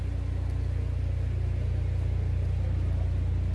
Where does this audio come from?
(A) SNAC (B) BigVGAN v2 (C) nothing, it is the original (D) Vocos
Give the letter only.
C